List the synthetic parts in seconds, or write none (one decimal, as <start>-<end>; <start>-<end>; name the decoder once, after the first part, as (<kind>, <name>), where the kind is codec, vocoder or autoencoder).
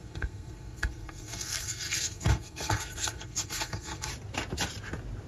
0.0-4.1 (codec, SNAC)